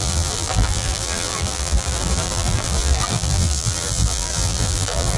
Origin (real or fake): fake